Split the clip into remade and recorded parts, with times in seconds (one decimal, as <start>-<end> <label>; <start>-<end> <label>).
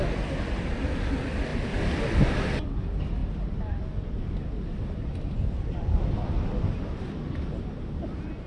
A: 0.0-8.5 recorded